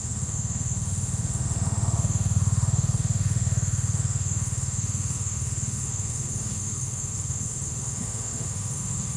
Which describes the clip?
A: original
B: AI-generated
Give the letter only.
B